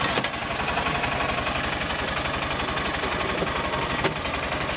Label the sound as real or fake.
real